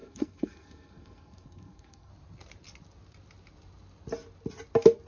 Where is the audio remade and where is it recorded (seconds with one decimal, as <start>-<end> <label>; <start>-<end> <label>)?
0.0-2.1 remade; 2.1-5.1 recorded